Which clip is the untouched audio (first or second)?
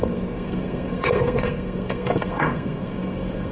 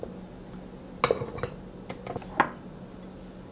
second